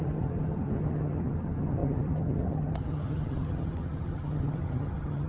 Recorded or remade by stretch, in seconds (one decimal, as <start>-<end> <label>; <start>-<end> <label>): 0.0-5.3 remade